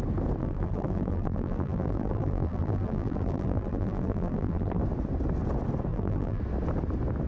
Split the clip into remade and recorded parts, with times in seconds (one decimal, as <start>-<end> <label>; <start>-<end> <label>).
0.0-0.4 recorded; 0.4-4.8 remade; 4.8-5.9 recorded; 5.9-6.4 remade; 6.4-7.3 recorded